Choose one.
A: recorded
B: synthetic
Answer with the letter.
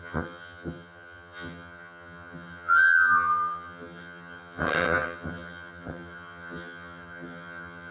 B